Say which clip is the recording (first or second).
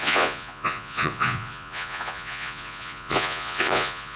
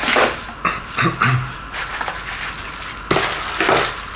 second